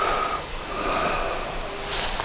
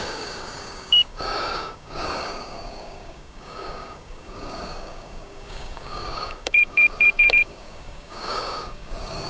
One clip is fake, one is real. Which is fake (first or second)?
second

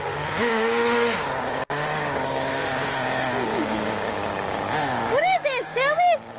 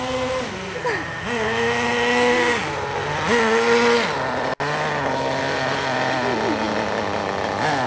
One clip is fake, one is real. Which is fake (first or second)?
first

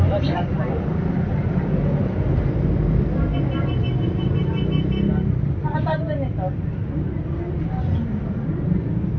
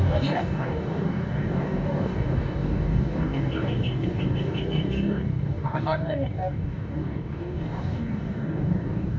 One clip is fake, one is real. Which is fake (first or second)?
second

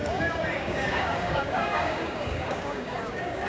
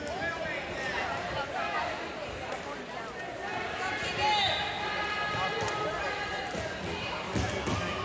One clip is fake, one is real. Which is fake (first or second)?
first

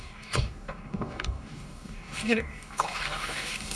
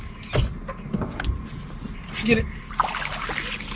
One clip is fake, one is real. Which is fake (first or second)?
first